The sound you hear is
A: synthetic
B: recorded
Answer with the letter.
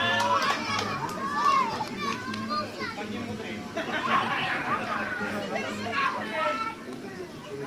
B